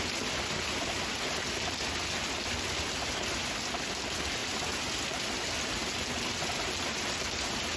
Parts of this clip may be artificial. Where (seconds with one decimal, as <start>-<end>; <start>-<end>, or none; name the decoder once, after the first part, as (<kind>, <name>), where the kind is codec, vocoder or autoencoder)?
none